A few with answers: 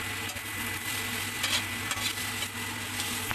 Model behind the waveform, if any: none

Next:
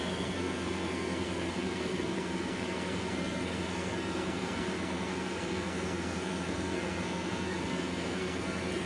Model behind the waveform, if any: codec, SNAC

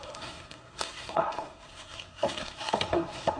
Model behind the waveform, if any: codec, SNAC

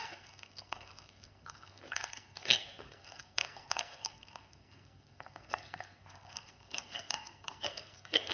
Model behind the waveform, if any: codec, SNAC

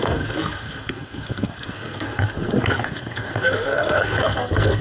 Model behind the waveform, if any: codec, SNAC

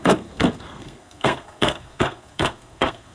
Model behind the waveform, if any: codec, SNAC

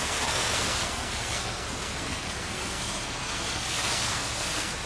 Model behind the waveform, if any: codec, SNAC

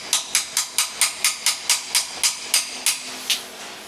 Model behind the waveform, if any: none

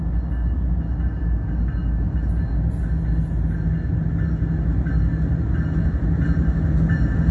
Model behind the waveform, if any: none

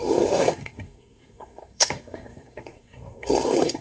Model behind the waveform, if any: codec, SNAC